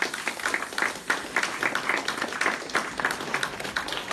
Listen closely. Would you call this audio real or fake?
real